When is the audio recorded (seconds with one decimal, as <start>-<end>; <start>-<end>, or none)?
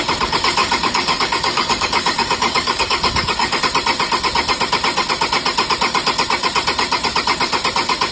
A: 0.0-0.6; 3.6-8.1